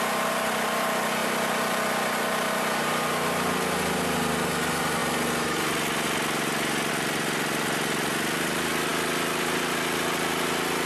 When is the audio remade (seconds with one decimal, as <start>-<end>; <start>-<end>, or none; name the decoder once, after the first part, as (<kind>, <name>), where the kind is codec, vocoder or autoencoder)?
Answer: 1.2-2.2 (vocoder, BigVGAN v2)